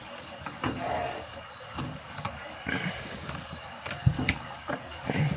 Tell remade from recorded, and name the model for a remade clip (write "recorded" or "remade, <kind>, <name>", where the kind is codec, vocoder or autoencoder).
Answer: remade, codec, DAC